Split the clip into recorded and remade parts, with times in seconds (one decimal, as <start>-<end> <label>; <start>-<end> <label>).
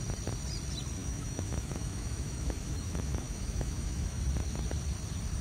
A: 0.0-1.0 recorded; 1.0-4.2 remade; 4.2-5.4 recorded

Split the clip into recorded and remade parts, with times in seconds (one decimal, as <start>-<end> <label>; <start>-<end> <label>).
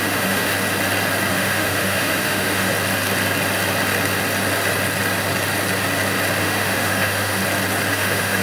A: 0.0-0.5 remade; 0.5-1.3 recorded; 1.3-2.7 remade; 2.7-6.4 recorded; 6.4-7.4 remade; 7.4-7.9 recorded; 7.9-8.4 remade